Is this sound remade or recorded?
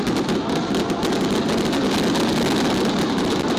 recorded